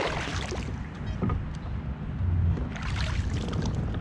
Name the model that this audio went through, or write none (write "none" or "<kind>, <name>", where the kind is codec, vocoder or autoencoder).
none